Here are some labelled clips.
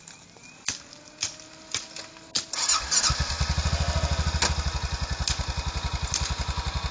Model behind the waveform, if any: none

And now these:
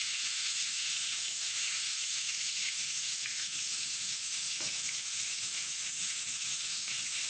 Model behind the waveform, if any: autoencoder, DAC-VAE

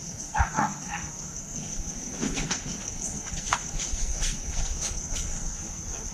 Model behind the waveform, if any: codec, SNAC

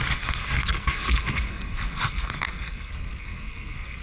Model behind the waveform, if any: codec, SNAC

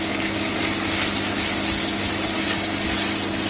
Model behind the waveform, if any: none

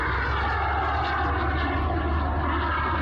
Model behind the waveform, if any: none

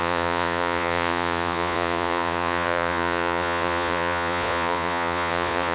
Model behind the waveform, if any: vocoder, Vocos